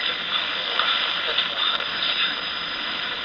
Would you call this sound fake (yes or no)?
yes